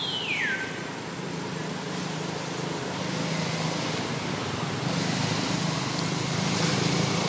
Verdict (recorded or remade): recorded